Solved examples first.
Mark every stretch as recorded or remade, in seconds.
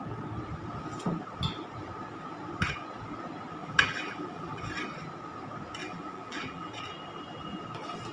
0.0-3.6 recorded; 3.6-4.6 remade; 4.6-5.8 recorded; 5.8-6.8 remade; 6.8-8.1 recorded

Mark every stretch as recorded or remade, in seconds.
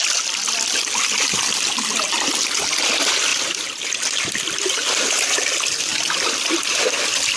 0.0-7.4 recorded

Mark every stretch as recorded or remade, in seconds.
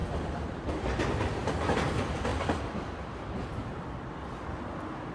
0.0-0.7 remade; 0.7-2.3 recorded; 2.3-4.1 remade; 4.1-5.1 recorded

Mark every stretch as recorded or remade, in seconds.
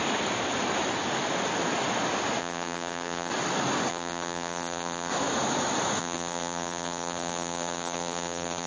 0.0-2.4 recorded; 2.4-3.3 remade; 3.3-3.9 recorded; 3.9-5.1 remade; 5.1-6.0 recorded; 6.0-8.7 remade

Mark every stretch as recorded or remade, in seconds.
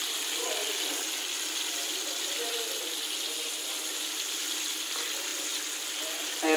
0.0-6.6 recorded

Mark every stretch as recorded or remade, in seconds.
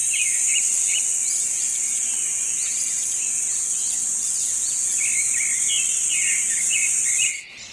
0.0-1.9 recorded; 1.9-4.2 remade; 4.2-7.7 recorded